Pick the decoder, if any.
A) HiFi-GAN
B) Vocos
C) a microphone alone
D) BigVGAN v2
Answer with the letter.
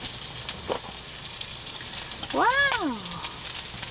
C